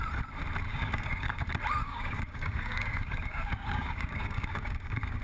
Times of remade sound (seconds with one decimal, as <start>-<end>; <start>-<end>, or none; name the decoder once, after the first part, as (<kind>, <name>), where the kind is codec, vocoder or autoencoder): 0.7-1.4 (codec, DAC); 1.8-5.2